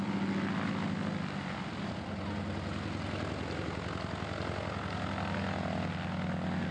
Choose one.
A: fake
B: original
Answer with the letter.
B